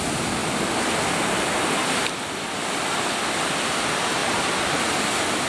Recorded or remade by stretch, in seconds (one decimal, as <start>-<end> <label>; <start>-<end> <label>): 0.0-0.4 recorded; 0.4-3.7 remade; 3.7-5.5 recorded